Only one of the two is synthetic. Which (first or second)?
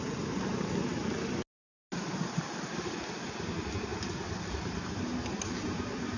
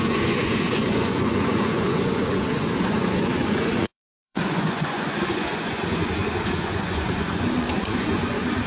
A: second